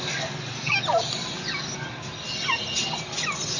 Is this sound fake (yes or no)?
no